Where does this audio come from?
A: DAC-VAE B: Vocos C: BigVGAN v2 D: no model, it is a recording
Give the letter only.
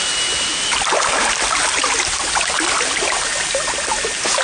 D